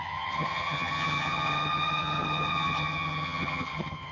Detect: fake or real fake